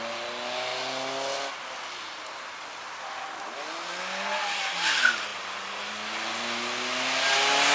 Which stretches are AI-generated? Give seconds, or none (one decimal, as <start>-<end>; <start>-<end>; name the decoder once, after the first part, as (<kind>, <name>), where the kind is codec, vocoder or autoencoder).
none